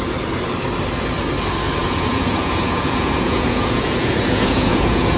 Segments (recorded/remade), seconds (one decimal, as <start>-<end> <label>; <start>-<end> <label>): 0.0-1.8 recorded; 1.8-5.2 remade